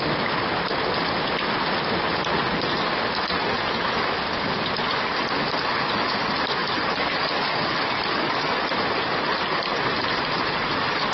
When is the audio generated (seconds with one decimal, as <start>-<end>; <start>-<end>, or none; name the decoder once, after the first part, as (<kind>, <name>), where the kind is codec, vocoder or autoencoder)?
6.6-8.7 (codec, DAC)